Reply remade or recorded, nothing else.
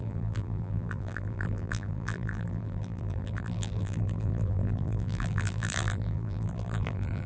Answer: remade